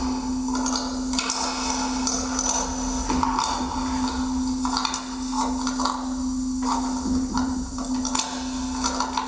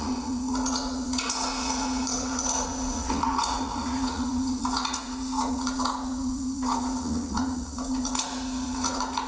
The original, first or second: first